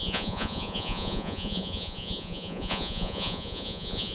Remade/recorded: remade